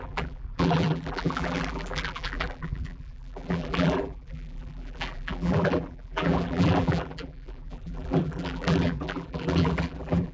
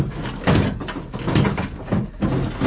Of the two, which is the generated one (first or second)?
first